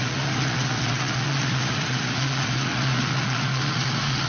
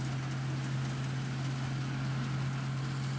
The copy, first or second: first